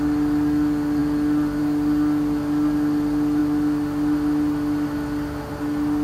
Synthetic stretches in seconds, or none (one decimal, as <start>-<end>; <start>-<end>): none